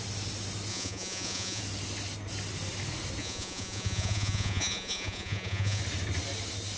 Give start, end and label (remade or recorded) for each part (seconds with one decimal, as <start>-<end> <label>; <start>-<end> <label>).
0.0-0.7 recorded; 0.7-1.6 remade; 1.6-3.2 recorded; 3.2-5.8 remade; 5.8-6.8 recorded